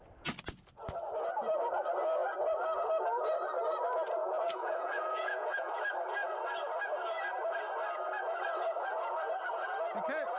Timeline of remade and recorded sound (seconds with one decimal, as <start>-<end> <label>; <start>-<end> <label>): 0.0-4.2 recorded; 4.2-5.7 remade; 5.7-10.4 recorded